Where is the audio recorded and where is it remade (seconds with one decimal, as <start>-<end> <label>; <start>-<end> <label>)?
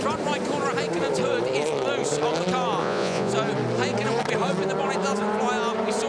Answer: 0.0-2.8 recorded; 2.8-3.3 remade; 3.3-6.1 recorded